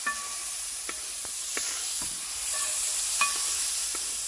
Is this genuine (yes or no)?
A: yes